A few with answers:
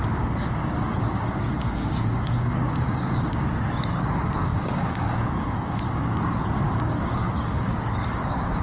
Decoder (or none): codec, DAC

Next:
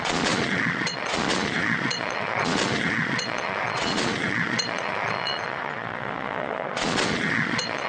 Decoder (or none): vocoder, Vocos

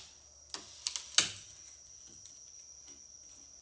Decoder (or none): none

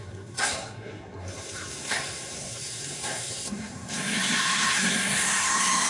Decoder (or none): codec, SNAC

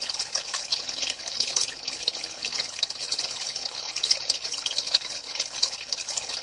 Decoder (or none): codec, HILCodec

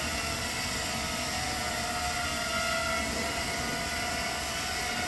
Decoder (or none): none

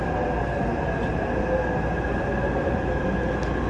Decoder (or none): none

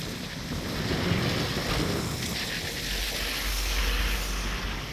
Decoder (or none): none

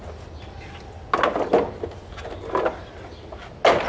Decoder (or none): none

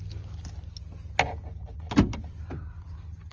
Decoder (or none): none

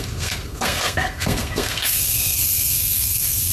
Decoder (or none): codec, SNAC